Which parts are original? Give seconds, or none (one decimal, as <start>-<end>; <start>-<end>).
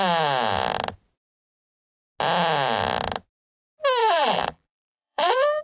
0.0-4.0